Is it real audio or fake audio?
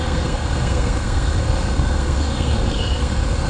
fake